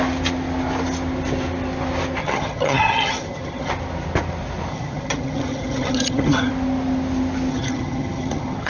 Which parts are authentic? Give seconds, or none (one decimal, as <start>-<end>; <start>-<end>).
0.0-2.2; 3.7-4.7; 6.5-7.5